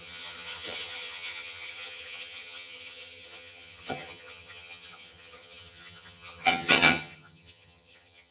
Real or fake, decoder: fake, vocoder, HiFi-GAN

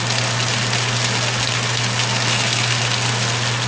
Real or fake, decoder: real